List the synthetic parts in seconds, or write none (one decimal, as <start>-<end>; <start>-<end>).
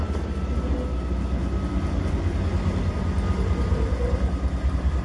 none